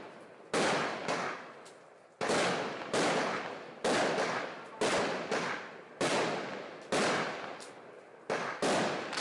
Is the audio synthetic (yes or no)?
no